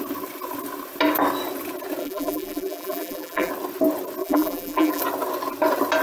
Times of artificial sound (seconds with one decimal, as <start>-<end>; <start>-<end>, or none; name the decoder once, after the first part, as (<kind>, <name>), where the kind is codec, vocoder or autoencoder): 2.0-3.5 (vocoder, BigVGAN v2); 4.2-5.0